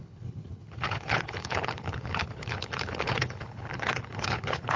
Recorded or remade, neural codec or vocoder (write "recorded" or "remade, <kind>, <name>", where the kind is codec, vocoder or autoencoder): remade, codec, HILCodec